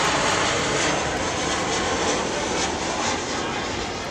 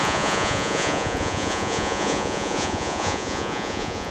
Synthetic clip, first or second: second